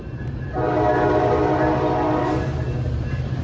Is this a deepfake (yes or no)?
yes